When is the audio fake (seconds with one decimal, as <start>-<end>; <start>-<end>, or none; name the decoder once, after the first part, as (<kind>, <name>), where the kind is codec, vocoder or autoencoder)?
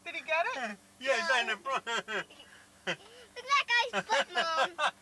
0.7-1.3 (autoencoder, DAC-VAE); 2.5-4.2